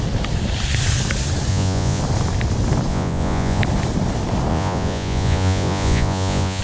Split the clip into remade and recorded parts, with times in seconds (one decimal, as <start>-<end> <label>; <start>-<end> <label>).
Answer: 0.0-1.5 recorded; 1.5-2.0 remade; 2.0-2.9 recorded; 2.9-3.6 remade; 3.6-4.5 recorded; 4.5-6.6 remade